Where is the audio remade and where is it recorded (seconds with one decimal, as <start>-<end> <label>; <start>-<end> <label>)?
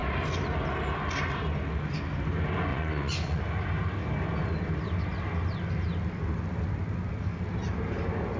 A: 0.0-2.7 recorded; 2.7-3.4 remade; 3.4-8.4 recorded